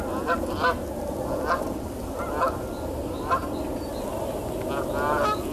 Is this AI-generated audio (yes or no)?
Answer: no